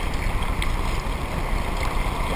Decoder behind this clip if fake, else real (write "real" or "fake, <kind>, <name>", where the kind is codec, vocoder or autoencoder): real